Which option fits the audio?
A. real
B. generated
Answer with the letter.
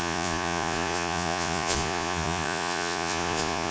B